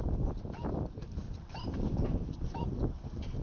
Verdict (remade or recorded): remade